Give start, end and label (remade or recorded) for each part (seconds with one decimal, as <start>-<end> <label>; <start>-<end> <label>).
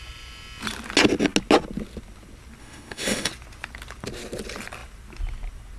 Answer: 0.0-2.6 recorded; 2.6-3.3 remade; 3.3-5.8 recorded